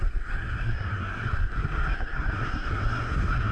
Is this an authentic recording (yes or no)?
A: no